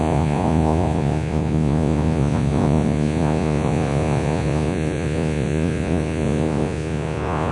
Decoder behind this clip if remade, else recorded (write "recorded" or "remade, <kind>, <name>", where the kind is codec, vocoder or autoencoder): remade, vocoder, Vocos